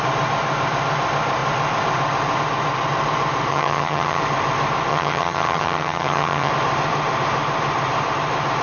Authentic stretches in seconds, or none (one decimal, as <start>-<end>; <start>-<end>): 0.0-3.5; 4.2-4.9; 6.5-8.6